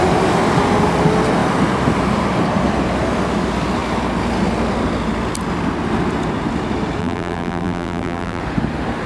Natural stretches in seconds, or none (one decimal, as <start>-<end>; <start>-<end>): 0.0-7.0; 8.4-9.1